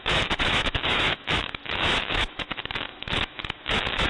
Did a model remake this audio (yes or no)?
yes